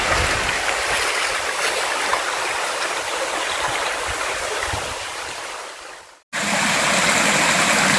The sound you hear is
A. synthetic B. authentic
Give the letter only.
B